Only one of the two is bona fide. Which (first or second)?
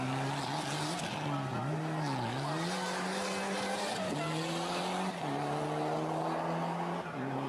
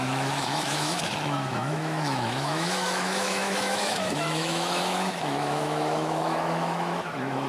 first